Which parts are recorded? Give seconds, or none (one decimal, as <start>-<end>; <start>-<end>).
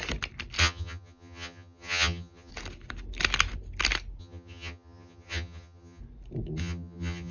0.0-0.6; 2.5-4.2; 6.0-6.6